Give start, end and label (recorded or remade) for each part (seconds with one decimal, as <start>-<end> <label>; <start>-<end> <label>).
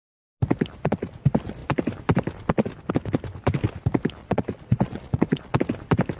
0.0-4.2 recorded; 4.2-5.6 remade; 5.6-6.2 recorded